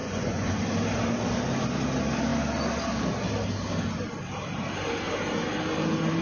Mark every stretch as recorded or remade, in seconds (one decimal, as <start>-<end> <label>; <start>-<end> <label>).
0.0-0.6 remade; 0.6-6.2 recorded